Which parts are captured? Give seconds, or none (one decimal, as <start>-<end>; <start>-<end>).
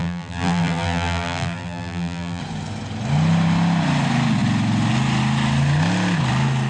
2.4-6.7